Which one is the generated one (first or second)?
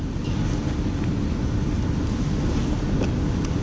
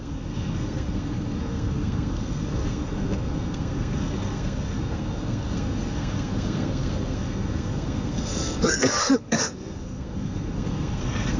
second